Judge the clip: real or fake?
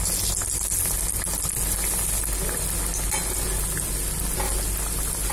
real